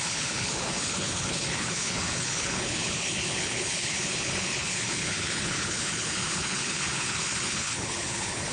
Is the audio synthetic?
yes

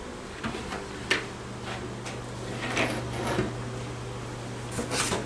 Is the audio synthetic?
no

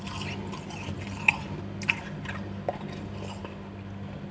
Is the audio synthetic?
no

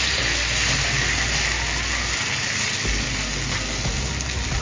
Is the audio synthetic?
no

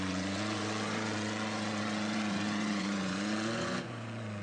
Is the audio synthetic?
yes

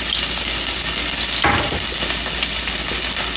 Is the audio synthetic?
no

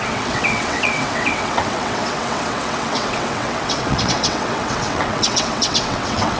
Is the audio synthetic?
yes